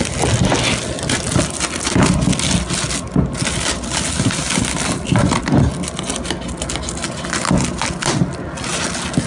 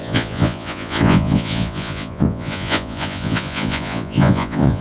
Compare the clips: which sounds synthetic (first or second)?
second